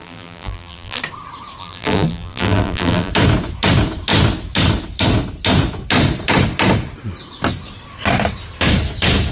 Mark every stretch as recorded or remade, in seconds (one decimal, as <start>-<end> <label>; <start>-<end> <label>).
0.0-1.0 remade; 1.0-1.6 recorded; 1.6-3.1 remade; 3.1-9.3 recorded